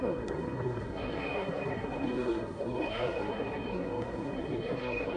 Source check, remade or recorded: remade